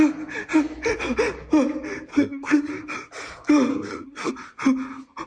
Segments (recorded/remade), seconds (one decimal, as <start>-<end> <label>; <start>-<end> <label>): 0.0-2.1 recorded; 2.1-2.7 remade; 2.7-3.7 recorded; 3.7-4.3 remade; 4.3-5.3 recorded